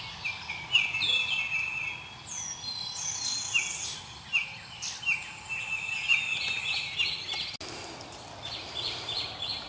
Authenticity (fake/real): real